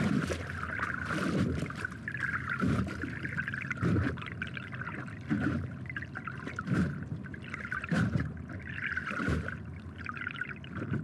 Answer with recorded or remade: recorded